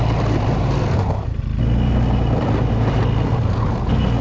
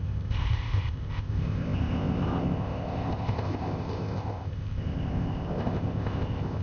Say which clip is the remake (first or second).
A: second